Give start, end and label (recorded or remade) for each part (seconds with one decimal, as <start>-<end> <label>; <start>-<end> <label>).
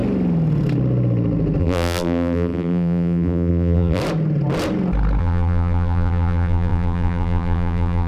0.0-1.6 recorded; 1.6-4.0 remade; 4.0-5.2 recorded; 5.2-8.1 remade